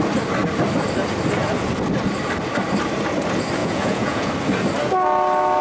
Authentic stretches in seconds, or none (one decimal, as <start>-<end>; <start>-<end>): 0.0-3.6; 4.3-5.6